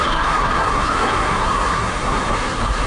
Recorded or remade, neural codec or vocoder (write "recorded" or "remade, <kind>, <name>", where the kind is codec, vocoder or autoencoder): remade, codec, SNAC